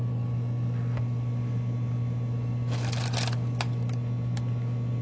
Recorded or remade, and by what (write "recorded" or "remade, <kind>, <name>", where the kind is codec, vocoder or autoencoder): recorded